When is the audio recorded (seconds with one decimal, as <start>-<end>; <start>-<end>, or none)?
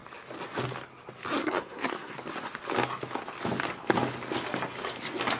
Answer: 0.0-1.4; 2.2-5.4